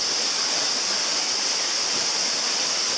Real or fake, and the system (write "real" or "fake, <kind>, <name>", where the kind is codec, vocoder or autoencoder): real